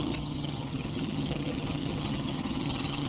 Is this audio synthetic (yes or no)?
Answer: yes